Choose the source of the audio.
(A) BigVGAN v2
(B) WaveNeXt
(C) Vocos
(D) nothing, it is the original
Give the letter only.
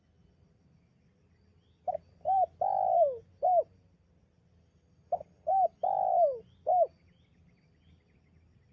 D